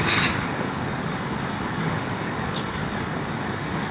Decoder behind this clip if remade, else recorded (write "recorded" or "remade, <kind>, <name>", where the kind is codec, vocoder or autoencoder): remade, codec, DAC